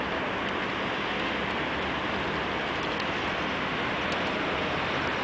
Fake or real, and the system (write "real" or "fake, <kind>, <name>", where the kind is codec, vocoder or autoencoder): real